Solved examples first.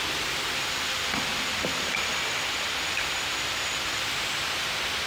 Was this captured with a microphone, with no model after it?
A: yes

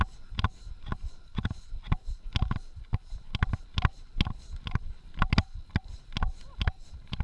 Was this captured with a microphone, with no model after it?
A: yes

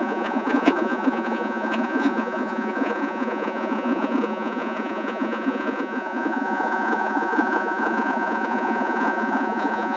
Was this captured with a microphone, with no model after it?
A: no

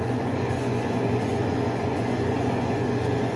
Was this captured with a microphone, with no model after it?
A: no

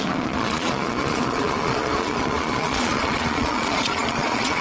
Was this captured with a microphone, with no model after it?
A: no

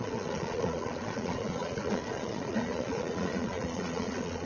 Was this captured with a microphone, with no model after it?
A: no